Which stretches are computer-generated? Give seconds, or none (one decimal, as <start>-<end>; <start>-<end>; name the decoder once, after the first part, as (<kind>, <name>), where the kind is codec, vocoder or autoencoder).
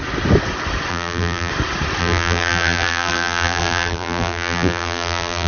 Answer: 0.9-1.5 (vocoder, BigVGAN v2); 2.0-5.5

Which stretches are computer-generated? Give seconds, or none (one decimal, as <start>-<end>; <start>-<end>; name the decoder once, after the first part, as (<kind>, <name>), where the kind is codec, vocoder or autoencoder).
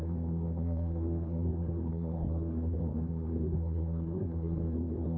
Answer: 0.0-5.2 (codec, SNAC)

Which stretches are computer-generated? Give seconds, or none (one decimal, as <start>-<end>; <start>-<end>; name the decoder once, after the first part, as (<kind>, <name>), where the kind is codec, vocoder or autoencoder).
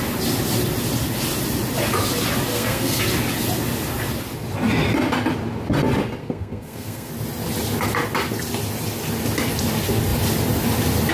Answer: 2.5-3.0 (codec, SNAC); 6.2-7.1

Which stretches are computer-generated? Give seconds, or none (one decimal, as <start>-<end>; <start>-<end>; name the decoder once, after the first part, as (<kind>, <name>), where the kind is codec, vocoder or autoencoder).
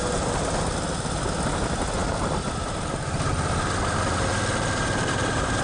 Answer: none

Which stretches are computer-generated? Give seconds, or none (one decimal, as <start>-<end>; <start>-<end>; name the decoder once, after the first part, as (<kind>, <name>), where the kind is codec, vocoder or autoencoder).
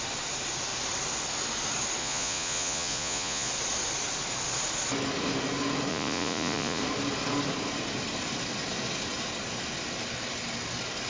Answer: 2.0-3.5 (vocoder, Vocos); 5.9-6.8